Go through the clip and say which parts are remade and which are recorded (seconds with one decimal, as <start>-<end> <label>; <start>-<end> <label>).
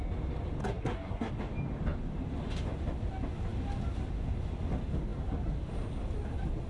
0.0-0.6 recorded; 0.6-1.3 remade; 1.3-6.7 recorded